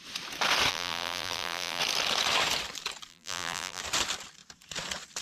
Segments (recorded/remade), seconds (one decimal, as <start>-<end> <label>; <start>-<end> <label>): 0.0-0.7 recorded; 0.7-1.8 remade; 1.8-3.1 recorded; 3.1-3.8 remade; 3.8-5.2 recorded